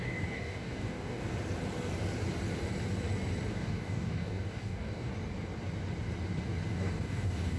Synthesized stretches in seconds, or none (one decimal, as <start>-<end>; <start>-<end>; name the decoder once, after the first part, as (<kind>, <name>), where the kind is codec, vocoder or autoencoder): 0.0-1.2 (codec, DAC); 3.5-5.1; 6.7-7.6